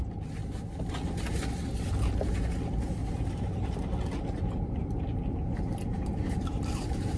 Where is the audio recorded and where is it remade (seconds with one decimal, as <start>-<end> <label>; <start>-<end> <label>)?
0.0-3.0 recorded; 3.0-3.8 remade; 3.8-5.9 recorded; 5.9-7.2 remade